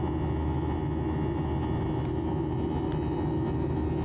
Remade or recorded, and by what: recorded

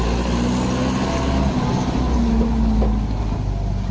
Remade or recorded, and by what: recorded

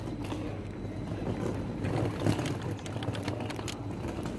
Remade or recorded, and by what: recorded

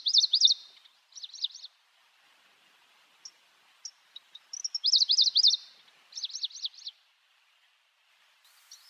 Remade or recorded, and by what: recorded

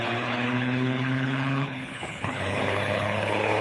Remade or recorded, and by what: remade, codec, HILCodec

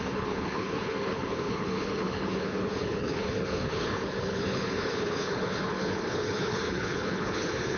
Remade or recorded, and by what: remade, codec, HILCodec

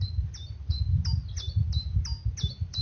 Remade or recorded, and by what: recorded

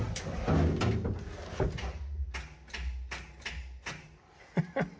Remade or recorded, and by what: recorded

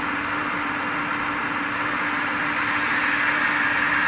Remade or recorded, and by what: recorded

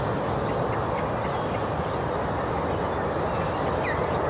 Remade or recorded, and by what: recorded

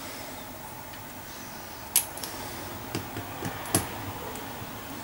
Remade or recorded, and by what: recorded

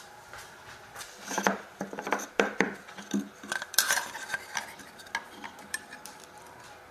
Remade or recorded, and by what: recorded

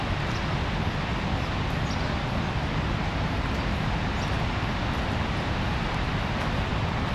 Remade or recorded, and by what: recorded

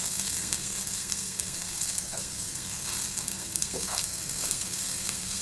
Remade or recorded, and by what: remade, codec, SNAC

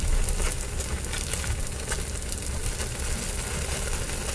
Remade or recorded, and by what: recorded